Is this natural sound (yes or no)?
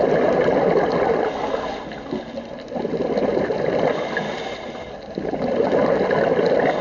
yes